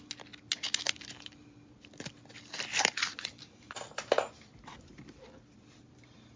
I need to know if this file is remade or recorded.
recorded